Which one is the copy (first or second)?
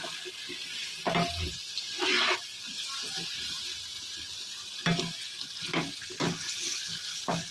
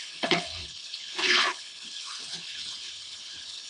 second